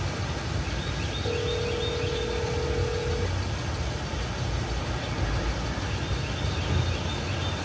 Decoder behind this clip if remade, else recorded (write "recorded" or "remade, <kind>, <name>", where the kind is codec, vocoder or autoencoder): recorded